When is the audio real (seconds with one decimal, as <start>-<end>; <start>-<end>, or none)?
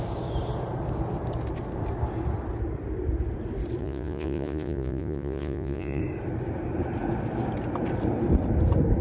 0.0-3.8; 6.0-9.0